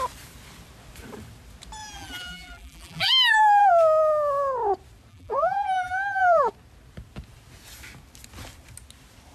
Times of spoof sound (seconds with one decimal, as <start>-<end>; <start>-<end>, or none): 1.8-3.7; 5.1-6.5